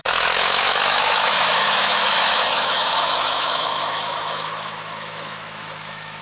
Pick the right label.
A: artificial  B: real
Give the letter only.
A